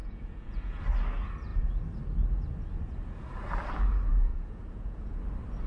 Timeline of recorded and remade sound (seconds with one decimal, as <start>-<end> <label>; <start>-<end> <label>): 0.0-0.8 remade; 0.8-4.3 recorded; 4.3-5.2 remade; 5.2-5.7 recorded